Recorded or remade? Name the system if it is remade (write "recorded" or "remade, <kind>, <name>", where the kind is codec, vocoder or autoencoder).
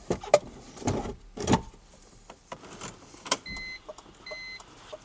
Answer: recorded